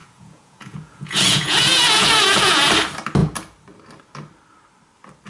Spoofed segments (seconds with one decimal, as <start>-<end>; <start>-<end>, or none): 0.0-2.7